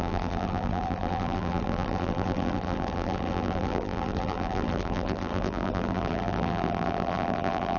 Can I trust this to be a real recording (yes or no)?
no